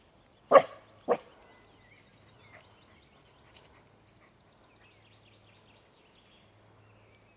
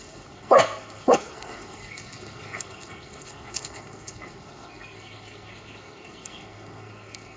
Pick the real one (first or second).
first